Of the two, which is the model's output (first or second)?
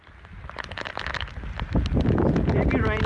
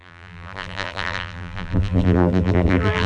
second